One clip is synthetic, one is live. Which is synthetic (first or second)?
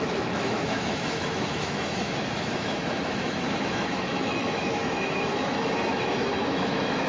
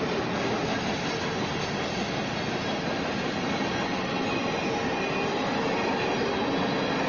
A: first